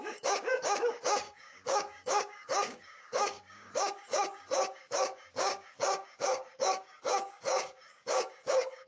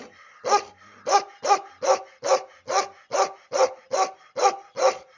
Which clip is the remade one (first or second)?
first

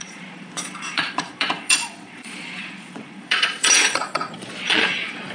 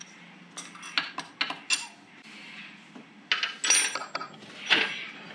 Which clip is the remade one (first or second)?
first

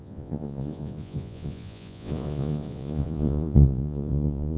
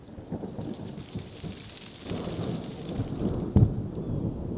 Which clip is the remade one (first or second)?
first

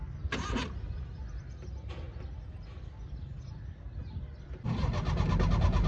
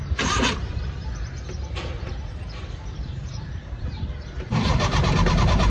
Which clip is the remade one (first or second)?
second